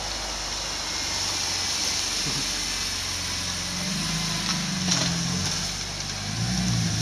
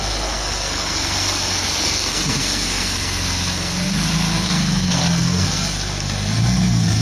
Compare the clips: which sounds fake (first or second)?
second